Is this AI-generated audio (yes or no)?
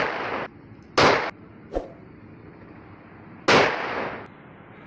no